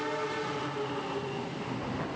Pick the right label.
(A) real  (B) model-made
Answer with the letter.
A